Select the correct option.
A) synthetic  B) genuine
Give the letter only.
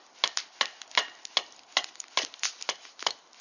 B